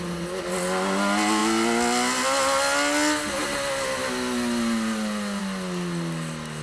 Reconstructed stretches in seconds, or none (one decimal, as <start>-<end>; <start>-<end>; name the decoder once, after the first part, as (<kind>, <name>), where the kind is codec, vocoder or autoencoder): none